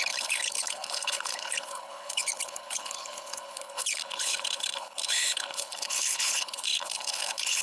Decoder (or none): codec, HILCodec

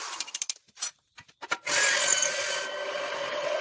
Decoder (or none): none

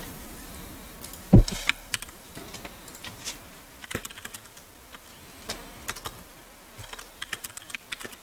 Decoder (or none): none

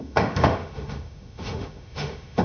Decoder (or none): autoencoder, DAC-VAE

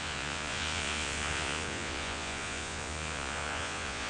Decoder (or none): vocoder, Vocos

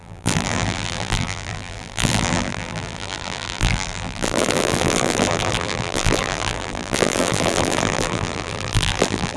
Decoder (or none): vocoder, BigVGAN v2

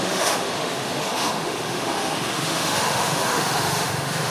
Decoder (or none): autoencoder, DAC-VAE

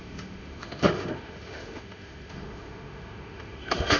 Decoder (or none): autoencoder, DAC-VAE